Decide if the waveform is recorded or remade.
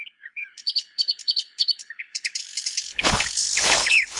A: remade